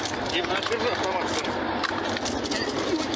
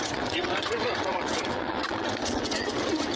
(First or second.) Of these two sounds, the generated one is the second